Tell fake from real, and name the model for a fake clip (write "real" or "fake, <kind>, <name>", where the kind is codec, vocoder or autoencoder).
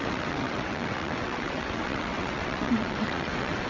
fake, vocoder, WaveNeXt